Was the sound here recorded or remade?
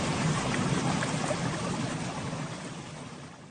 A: recorded